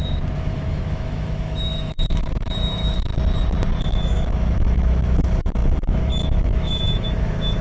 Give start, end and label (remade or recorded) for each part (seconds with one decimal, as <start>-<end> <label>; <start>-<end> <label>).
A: 0.0-3.1 remade; 3.1-3.8 recorded; 3.8-7.6 remade